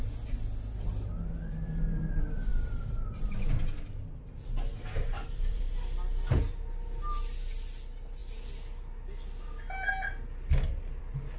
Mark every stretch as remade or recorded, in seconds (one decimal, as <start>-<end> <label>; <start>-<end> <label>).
0.0-2.5 recorded; 2.5-3.5 remade; 3.5-5.2 recorded; 5.2-5.7 remade; 5.7-11.4 recorded